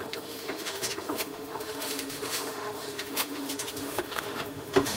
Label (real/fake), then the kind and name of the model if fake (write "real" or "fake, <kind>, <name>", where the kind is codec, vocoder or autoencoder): fake, autoencoder, DAC-VAE